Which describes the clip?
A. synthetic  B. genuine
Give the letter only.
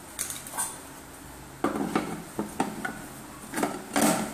B